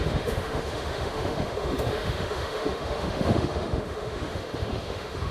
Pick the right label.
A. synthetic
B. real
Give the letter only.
A